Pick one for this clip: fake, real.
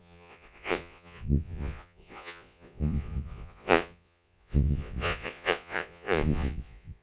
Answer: fake